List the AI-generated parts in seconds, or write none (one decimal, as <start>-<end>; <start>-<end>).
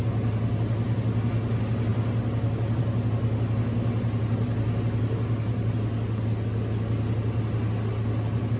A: none